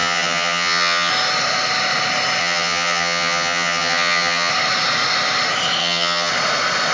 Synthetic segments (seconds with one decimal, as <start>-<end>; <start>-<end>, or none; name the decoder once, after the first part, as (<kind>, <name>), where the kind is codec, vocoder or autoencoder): 0.0-1.1 (vocoder, HiFi-GAN); 2.4-4.5; 5.8-6.3